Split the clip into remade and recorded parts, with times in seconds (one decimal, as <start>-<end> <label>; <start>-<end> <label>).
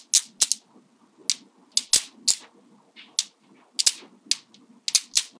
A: 0.0-5.4 recorded